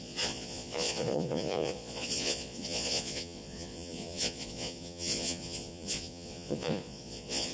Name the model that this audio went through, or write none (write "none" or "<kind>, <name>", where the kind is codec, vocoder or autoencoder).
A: vocoder, Vocos